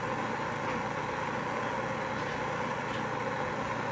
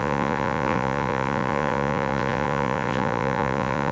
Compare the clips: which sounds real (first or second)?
first